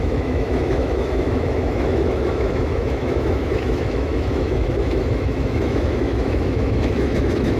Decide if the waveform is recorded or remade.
remade